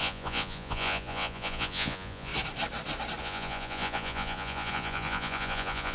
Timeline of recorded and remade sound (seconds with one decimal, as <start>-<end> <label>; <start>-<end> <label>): 0.0-2.3 remade; 2.3-3.2 recorded; 3.2-5.9 remade